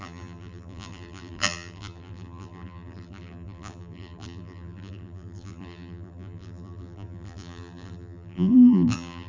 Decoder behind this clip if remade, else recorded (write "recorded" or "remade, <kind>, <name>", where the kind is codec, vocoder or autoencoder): remade, vocoder, BigVGAN v2